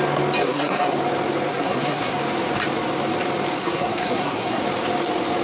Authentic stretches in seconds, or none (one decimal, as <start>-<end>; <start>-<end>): 0.0-0.4; 1.0-1.5; 2.2-3.6; 4.6-5.4